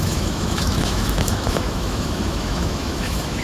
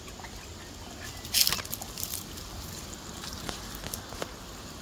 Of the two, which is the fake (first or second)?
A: first